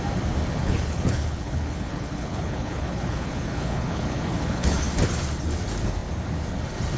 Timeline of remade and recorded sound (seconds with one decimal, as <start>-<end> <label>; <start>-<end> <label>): 0.0-0.6 recorded; 0.6-4.8 remade; 4.8-7.0 recorded